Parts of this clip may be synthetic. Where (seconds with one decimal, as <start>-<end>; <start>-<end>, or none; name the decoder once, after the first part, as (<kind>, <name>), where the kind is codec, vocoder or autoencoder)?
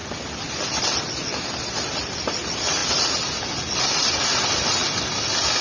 none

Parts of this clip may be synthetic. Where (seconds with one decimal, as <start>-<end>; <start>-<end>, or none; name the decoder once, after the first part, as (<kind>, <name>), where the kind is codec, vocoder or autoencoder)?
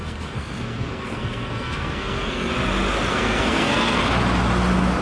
0.0-2.5 (codec, SNAC); 3.1-4.0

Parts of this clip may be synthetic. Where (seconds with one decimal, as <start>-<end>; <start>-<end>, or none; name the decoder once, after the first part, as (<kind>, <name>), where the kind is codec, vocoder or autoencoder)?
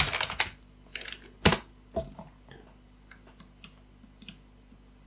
none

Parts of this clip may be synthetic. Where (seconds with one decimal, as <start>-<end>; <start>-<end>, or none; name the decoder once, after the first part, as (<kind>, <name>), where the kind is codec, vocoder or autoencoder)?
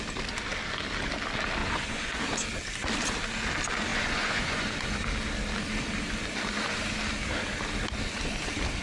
1.6-2.2 (vocoder, Vocos); 3.9-4.7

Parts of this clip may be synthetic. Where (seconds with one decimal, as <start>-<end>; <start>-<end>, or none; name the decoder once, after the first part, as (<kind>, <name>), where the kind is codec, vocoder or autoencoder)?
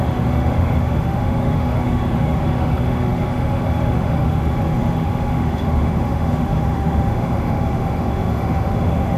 0.0-9.2 (autoencoder, DAC-VAE)